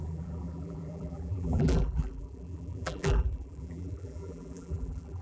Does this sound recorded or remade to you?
remade